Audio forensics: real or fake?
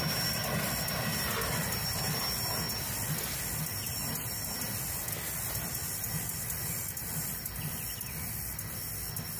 real